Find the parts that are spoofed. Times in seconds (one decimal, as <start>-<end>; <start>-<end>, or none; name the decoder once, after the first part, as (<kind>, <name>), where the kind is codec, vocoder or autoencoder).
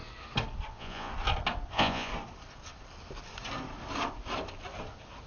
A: 0.7-1.1 (vocoder, Vocos); 1.7-2.1